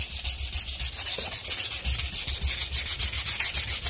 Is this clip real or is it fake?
real